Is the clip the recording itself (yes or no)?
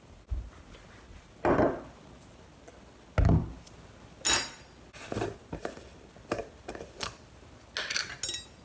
yes